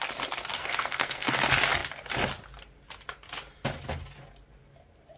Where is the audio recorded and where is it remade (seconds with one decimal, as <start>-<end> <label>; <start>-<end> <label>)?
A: 0.0-0.6 recorded; 0.6-1.3 remade; 1.3-5.2 recorded